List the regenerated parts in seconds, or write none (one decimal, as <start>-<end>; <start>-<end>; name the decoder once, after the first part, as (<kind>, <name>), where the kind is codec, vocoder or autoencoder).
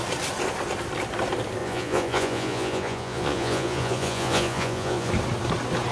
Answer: 1.6-5.1 (vocoder, Vocos)